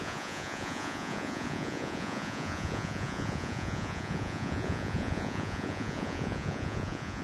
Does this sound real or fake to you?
fake